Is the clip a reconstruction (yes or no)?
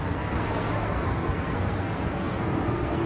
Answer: yes